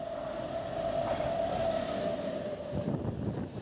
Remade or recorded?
recorded